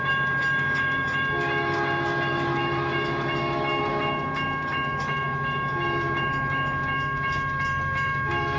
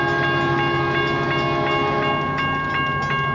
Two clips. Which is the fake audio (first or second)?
first